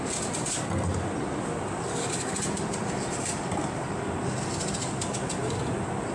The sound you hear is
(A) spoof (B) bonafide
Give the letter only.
B